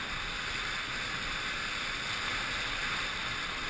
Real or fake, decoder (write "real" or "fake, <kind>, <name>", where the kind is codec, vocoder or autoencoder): real